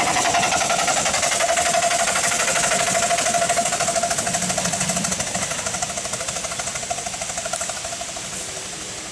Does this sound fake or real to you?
real